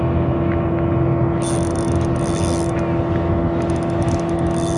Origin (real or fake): real